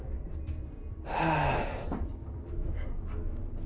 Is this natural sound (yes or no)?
yes